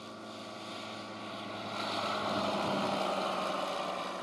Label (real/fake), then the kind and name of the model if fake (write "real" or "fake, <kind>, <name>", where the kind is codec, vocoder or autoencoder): real